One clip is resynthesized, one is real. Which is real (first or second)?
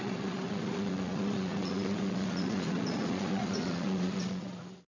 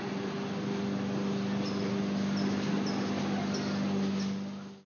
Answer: second